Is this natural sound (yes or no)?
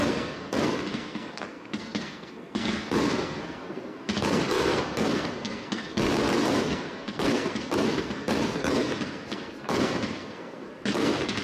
no